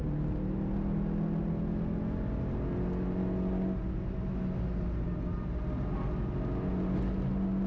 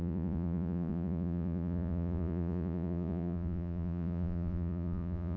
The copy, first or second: second